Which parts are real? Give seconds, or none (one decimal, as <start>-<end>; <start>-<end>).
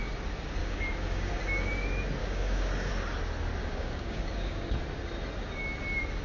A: 0.0-0.6; 1.4-2.2; 2.9-3.6; 4.7-6.2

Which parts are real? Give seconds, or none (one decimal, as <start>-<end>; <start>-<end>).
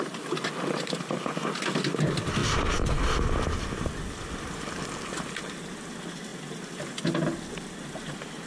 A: 0.0-8.5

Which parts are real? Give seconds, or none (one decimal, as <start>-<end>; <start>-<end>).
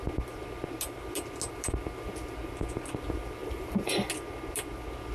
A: 0.0-3.4; 4.1-5.1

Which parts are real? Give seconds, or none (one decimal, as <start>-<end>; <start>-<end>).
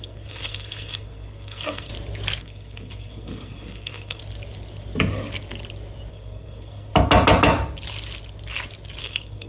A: 1.9-2.4; 4.2-6.1; 6.9-9.0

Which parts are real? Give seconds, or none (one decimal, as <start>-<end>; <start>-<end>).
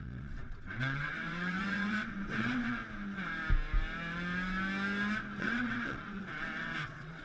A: 2.8-5.4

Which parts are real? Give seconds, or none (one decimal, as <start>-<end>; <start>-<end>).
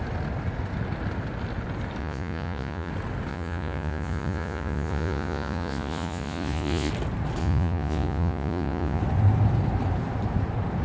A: 0.0-2.0; 2.9-3.3; 6.9-7.4; 9.0-10.8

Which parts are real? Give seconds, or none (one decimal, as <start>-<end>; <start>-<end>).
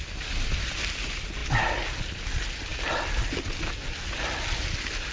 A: 0.0-5.1